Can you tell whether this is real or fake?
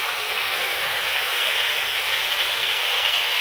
fake